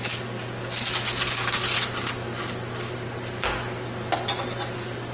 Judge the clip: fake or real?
real